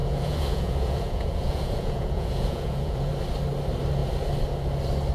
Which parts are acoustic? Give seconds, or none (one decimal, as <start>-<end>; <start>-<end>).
3.1-5.1

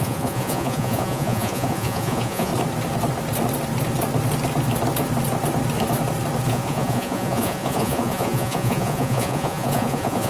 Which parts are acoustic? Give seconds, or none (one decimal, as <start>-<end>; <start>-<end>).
2.5-6.5

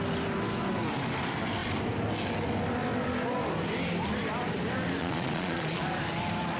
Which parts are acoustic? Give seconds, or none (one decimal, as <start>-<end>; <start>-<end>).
0.0-5.0; 5.8-6.6

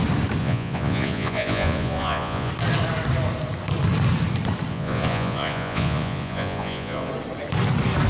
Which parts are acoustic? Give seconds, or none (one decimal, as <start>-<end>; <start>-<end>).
0.0-0.4; 2.5-4.7; 7.1-8.1

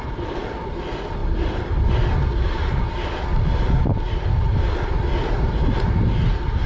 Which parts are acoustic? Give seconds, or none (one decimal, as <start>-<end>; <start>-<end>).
0.0-6.7